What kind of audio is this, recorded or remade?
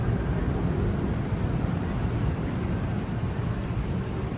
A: remade